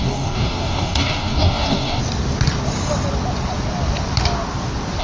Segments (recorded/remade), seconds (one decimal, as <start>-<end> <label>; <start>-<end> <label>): 0.0-2.0 remade; 2.0-5.0 recorded